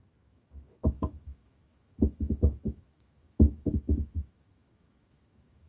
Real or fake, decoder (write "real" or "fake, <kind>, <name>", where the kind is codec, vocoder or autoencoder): fake, autoencoder, DAC-VAE